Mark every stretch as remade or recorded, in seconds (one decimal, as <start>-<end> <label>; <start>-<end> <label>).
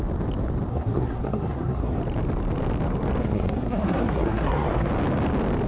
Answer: 0.0-0.7 recorded; 0.7-2.0 remade; 2.0-3.2 recorded; 3.2-4.9 remade; 4.9-5.7 recorded